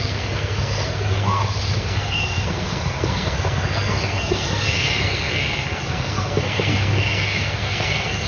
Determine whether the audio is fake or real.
fake